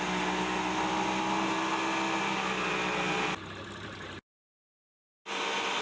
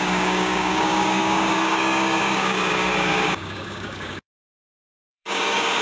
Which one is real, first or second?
first